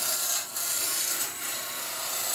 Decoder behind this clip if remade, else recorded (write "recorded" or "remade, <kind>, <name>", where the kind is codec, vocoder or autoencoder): remade, vocoder, BigVGAN v2